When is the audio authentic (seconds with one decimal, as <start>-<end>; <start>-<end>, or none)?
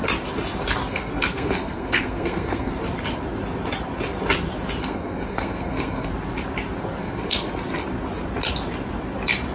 0.0-0.9; 2.7-4.8; 6.1-7.0; 7.5-9.5